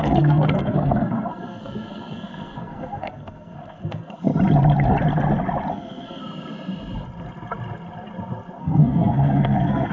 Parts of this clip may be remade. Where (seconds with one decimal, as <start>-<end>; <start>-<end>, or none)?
0.0-4.3; 5.7-6.2; 8.6-9.9